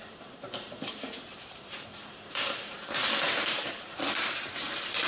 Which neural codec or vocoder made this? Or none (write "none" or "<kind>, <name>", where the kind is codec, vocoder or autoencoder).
vocoder, BigVGAN v2